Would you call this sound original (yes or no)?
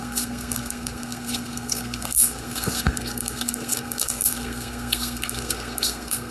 no